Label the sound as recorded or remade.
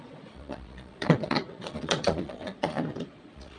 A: remade